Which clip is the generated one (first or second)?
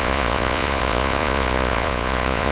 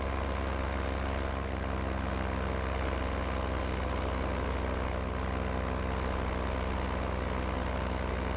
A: first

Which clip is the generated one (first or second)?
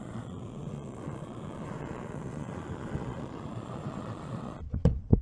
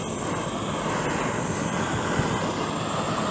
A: first